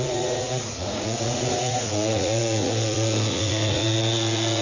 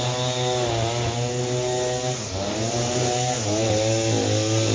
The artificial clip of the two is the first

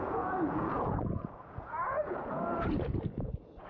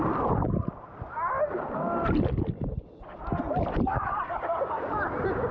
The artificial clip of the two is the first